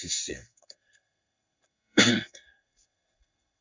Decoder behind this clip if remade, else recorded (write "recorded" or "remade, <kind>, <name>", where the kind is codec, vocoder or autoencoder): remade, codec, SNAC